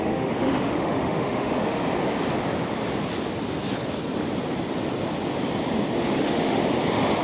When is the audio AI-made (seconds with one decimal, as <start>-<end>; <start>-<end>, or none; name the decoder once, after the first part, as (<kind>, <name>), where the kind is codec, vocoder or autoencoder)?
0.0-1.8 (autoencoder, DAC-VAE); 6.0-6.6